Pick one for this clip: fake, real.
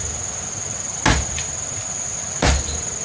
real